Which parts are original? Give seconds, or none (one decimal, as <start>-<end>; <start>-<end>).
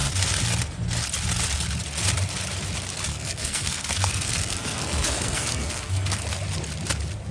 0.0-3.1; 6.2-7.3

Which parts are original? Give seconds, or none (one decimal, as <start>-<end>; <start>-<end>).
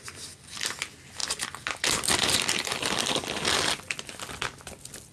0.0-5.1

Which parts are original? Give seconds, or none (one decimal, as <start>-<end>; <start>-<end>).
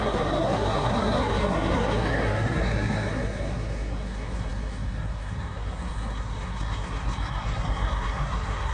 none